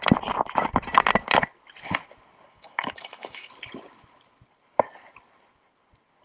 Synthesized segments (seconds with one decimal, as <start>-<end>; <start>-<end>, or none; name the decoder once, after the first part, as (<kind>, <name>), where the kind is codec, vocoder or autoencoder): 2.5-3.5 (autoencoder, DAC-VAE)